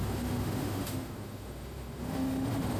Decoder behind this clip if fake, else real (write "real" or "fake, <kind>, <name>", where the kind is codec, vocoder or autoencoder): fake, autoencoder, DAC-VAE